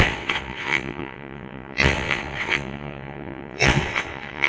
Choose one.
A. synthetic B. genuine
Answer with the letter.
A